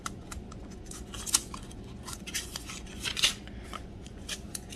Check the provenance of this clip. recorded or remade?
remade